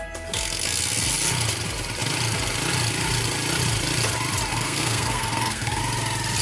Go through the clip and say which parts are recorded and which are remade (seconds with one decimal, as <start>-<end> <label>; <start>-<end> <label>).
0.0-4.5 recorded; 4.5-5.8 remade; 5.8-6.4 recorded